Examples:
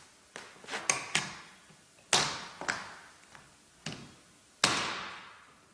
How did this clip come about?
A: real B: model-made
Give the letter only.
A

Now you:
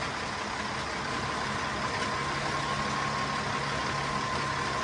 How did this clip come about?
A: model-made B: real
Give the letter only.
B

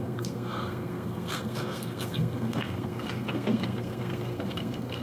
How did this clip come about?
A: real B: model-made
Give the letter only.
B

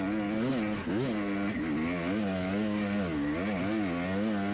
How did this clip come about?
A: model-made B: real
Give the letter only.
B